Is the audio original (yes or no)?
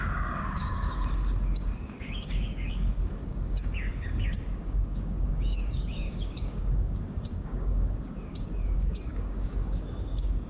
no